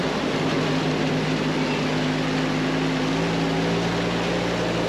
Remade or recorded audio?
recorded